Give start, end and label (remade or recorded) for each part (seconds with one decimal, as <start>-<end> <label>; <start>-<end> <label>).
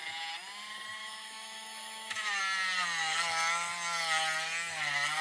0.0-1.0 recorded; 1.0-2.4 remade; 2.4-5.2 recorded